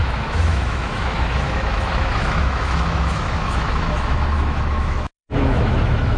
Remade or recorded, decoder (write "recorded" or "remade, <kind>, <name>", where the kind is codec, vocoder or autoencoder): remade, autoencoder, DAC-VAE